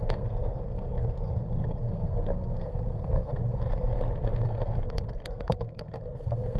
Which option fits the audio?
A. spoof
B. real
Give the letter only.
A